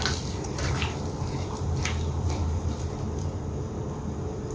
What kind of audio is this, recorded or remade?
recorded